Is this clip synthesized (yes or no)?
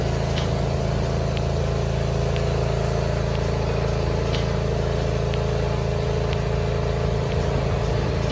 no